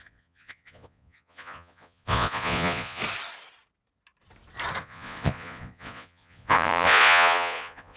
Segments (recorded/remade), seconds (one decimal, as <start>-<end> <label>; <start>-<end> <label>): 0.0-3.0 remade; 3.0-4.8 recorded; 4.8-8.0 remade